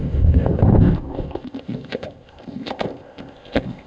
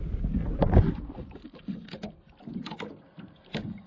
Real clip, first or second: second